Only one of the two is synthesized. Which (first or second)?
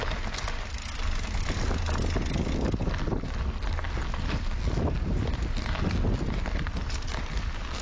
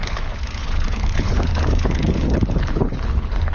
second